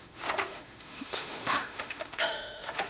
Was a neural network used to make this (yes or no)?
yes